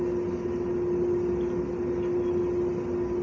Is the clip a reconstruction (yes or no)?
no